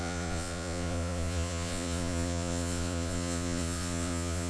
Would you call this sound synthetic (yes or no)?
yes